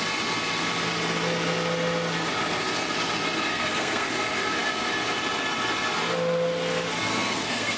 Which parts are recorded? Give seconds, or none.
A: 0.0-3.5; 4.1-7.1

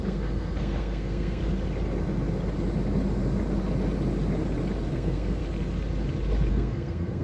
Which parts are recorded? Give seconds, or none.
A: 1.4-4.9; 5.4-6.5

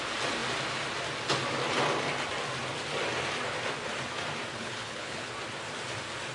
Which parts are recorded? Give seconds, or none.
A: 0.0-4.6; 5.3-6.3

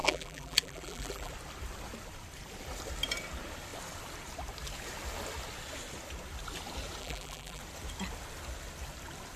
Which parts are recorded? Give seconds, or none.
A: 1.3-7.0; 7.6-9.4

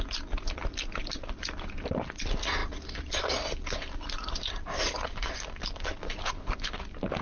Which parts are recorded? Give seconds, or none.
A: 0.0-6.2; 6.8-7.2

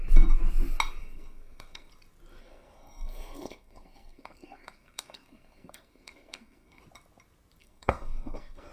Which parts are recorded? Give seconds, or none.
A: 0.0-1.0; 1.9-2.4; 6.8-7.6

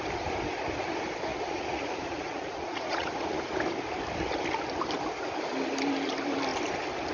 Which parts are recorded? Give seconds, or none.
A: 0.0-1.3; 3.5-7.1